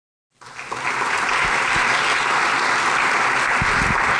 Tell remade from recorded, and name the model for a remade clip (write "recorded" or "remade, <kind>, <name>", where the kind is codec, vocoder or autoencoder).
recorded